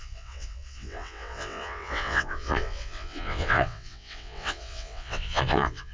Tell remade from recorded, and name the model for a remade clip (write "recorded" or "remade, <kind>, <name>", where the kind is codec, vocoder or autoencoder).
remade, vocoder, WaveNeXt